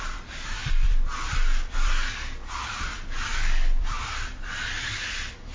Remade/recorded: remade